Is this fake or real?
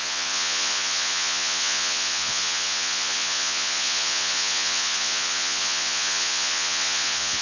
fake